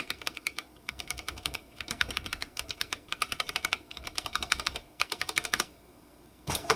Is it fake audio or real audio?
fake